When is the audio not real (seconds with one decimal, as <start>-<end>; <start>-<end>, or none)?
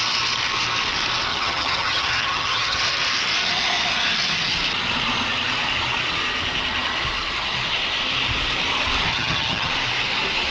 1.3-2.8; 9.1-9.7